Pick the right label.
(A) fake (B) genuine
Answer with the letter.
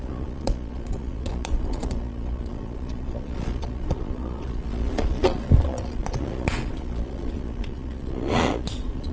A